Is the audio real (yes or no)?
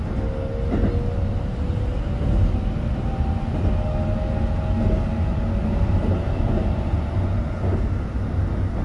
yes